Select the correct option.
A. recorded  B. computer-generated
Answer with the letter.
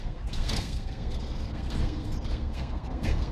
B